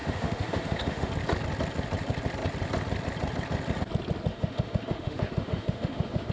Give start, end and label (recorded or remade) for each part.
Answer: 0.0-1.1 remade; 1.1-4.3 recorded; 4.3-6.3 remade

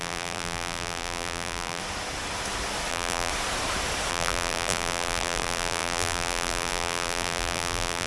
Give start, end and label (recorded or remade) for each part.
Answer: 0.0-1.8 remade; 1.8-2.9 recorded; 2.9-3.3 remade; 3.3-4.1 recorded; 4.1-8.1 remade

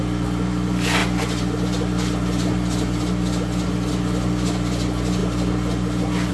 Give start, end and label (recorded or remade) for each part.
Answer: 0.0-6.3 recorded

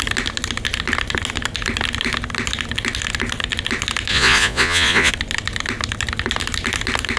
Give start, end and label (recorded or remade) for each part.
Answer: 0.0-4.1 recorded; 4.1-5.1 remade; 5.1-7.2 recorded

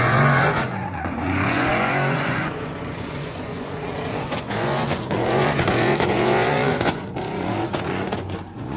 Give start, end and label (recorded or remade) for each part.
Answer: 0.0-8.8 remade

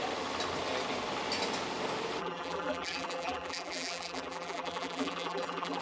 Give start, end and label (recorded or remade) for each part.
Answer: 0.0-2.2 recorded; 2.2-5.8 remade

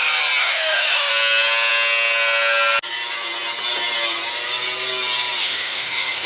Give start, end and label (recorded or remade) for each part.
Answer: 0.0-0.4 recorded; 0.4-1.1 remade; 1.1-5.4 recorded; 5.4-6.3 remade